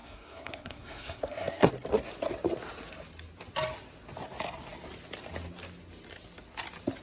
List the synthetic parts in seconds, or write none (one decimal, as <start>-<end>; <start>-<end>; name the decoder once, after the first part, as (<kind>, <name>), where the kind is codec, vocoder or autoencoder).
0.0-1.7 (codec, SNAC)